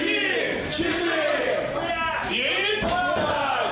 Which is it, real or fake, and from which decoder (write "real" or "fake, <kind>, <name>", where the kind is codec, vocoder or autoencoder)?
real